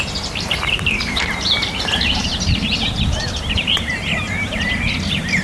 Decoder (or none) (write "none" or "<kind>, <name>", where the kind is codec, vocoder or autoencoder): vocoder, BigVGAN v2